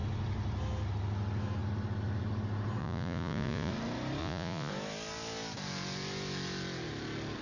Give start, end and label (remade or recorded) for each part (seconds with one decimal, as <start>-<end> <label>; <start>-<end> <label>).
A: 0.0-2.8 recorded; 2.8-3.7 remade; 3.7-4.2 recorded; 4.2-4.7 remade; 4.7-7.4 recorded